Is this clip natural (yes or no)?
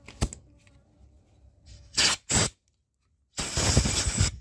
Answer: yes